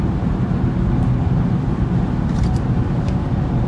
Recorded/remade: recorded